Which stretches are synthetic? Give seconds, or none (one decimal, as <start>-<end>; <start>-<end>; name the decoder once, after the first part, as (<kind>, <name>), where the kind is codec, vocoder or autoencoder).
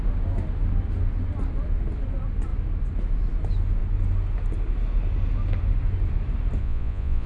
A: 6.6-7.3 (vocoder, Vocos)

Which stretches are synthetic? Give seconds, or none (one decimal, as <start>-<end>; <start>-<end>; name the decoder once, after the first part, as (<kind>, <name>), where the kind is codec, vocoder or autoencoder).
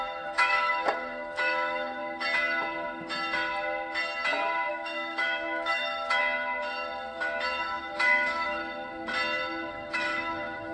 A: 0.0-2.0 (autoencoder, DAC-VAE); 4.7-6.2; 7.6-8.6; 9.7-10.7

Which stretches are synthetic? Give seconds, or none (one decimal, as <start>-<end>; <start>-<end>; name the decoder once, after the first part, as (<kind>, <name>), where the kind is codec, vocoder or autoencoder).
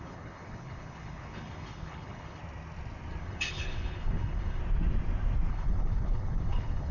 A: 0.0-2.4 (codec, HILCodec); 3.2-4.6; 5.5-6.9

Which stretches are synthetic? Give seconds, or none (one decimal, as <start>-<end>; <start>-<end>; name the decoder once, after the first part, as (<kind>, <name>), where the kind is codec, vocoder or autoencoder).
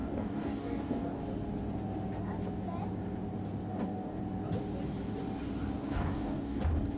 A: 0.0-1.2 (codec, DAC); 3.7-4.2; 5.8-6.6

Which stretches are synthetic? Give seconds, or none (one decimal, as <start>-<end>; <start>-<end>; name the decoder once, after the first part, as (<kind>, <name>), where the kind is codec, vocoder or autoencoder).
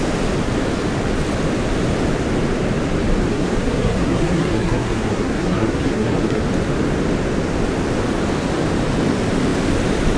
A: 3.3-6.4 (codec, SNAC)